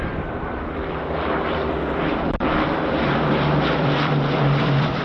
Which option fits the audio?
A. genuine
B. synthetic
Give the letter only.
B